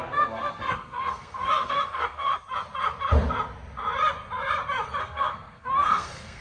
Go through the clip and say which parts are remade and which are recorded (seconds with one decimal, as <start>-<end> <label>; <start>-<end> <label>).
0.0-2.3 remade; 2.3-5.0 recorded; 5.0-6.4 remade